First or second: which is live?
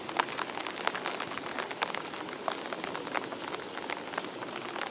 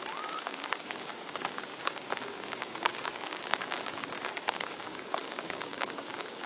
first